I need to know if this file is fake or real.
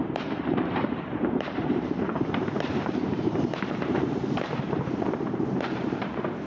fake